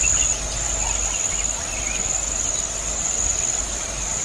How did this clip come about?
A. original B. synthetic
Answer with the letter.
A